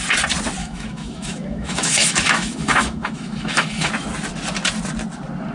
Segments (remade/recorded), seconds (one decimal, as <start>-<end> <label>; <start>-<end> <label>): 0.0-0.6 recorded; 0.6-3.9 remade; 3.9-5.5 recorded